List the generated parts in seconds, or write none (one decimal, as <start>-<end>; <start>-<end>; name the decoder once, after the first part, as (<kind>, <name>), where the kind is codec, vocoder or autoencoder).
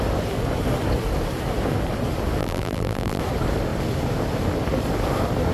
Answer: 2.4-3.2 (vocoder, BigVGAN v2)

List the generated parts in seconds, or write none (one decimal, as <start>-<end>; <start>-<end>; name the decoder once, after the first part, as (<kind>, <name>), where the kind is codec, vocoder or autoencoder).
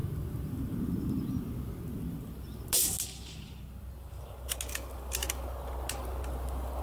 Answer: none